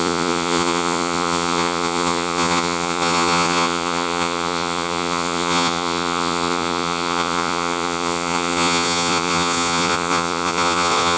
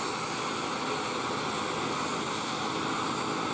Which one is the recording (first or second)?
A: second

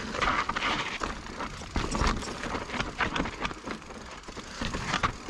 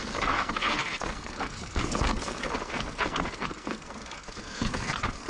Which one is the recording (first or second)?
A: first